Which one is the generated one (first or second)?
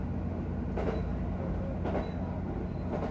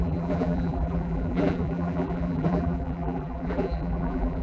second